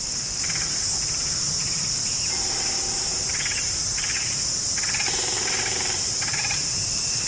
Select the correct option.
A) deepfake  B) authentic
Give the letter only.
A